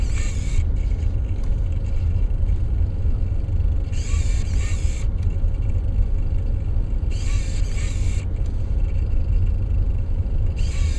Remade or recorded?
recorded